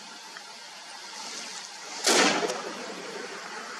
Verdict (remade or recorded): recorded